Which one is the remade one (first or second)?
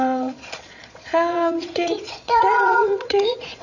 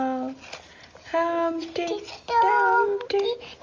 first